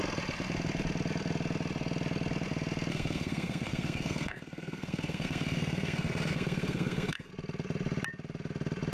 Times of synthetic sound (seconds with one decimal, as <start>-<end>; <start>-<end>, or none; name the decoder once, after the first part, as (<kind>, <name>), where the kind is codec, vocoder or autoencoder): 2.9-7.3 (codec, SNAC)